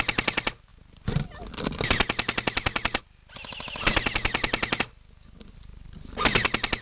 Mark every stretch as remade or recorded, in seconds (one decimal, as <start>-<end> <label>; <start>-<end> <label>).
0.0-6.8 recorded